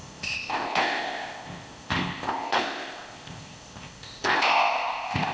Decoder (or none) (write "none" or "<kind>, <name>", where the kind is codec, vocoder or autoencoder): codec, ZipCodec